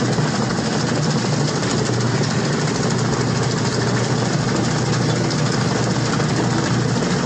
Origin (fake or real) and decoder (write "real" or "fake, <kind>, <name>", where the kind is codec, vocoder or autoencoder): real